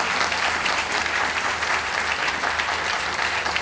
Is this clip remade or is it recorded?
recorded